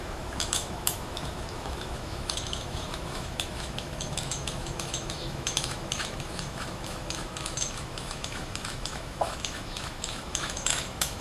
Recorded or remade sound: remade